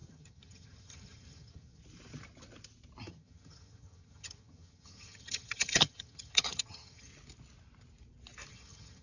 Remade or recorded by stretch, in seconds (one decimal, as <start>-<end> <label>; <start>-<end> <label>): 0.0-1.8 remade; 1.8-3.1 recorded; 3.1-7.1 remade; 7.1-8.5 recorded; 8.5-9.0 remade